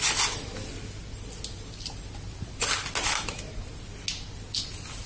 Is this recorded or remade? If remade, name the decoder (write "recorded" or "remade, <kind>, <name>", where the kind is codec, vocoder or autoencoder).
recorded